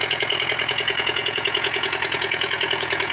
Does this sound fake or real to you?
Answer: fake